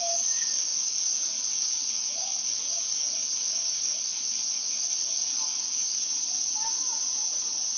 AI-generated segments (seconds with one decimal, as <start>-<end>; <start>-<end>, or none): 0.0-5.9